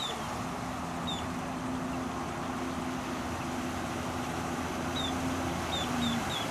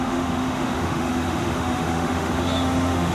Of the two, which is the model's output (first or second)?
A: second